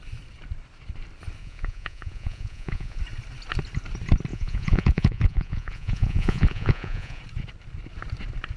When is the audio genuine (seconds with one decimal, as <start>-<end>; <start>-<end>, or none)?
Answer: 0.0-1.4; 3.0-4.3; 7.2-8.6